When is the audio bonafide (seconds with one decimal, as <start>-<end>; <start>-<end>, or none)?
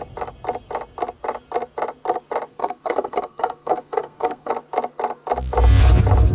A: 0.0-2.5; 4.5-6.3